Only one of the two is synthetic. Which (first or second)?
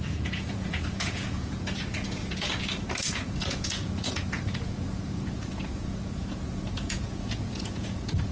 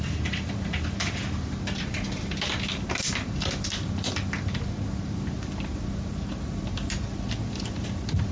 first